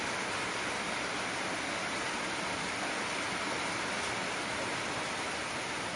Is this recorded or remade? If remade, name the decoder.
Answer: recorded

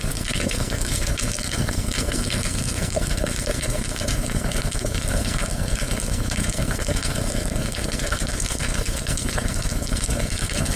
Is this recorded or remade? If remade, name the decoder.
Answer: remade, codec, SNAC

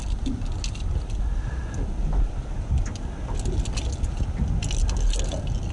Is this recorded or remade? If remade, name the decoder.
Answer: recorded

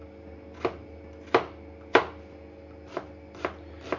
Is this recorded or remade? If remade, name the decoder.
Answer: recorded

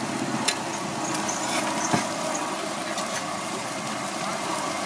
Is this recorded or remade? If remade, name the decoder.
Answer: recorded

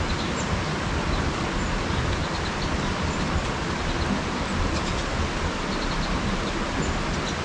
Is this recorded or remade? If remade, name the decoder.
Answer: recorded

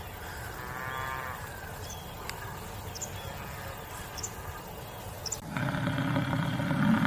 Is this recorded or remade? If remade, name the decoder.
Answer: recorded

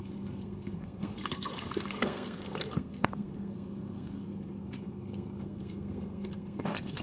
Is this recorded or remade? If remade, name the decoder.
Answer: remade, codec, SNAC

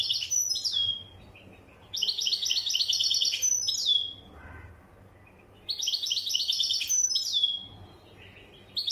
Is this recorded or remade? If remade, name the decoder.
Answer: recorded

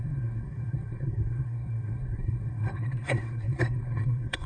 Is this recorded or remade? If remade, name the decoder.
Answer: remade, codec, SNAC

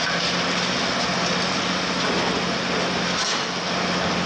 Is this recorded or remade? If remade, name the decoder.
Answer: recorded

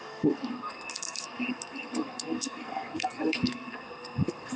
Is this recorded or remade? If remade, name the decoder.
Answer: remade, codec, SNAC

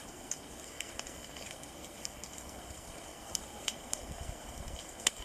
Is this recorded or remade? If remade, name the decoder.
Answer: remade, codec, SNAC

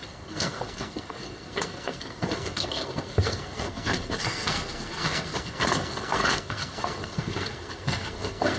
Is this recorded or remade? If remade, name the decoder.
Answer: remade, codec, SNAC